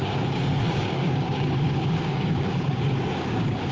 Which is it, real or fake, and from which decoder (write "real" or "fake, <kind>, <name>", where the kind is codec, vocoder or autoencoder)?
fake, codec, DAC